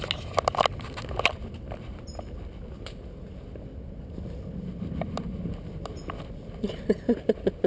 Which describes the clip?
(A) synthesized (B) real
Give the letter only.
B